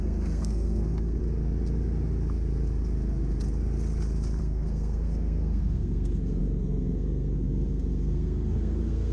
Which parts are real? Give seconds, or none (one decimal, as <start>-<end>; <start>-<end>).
1.2-4.4